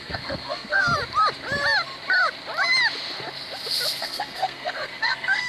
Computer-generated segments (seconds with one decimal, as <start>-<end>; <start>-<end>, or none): 0.0-0.9; 4.0-5.5